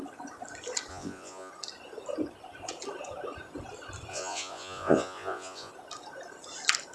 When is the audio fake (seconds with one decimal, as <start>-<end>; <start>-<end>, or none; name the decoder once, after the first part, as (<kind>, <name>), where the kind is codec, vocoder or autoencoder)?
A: 0.9-1.5 (vocoder, Vocos); 4.1-5.7